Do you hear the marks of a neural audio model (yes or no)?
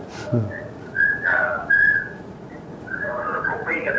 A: yes